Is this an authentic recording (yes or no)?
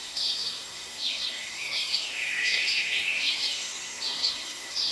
no